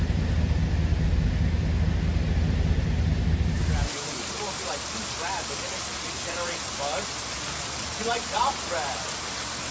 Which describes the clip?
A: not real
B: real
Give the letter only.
B